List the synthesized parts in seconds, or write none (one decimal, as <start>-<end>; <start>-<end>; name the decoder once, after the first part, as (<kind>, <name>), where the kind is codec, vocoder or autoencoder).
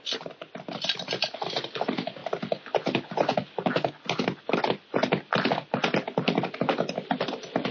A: none